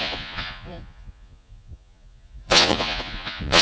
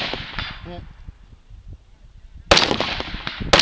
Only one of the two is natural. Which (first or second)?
second